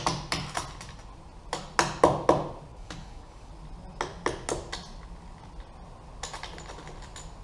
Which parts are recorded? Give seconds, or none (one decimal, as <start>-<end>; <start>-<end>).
0.0-2.7; 3.5-7.4